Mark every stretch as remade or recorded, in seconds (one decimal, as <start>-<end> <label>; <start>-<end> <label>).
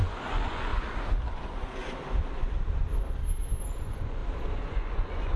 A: 0.0-0.7 remade; 0.7-1.3 recorded; 1.3-1.8 remade; 1.8-3.6 recorded; 3.6-4.2 remade; 4.2-4.7 recorded; 4.7-5.4 remade